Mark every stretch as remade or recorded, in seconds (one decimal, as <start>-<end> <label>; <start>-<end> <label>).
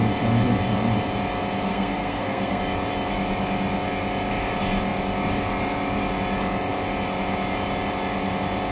0.0-1.7 recorded; 1.7-2.6 remade; 2.6-8.7 recorded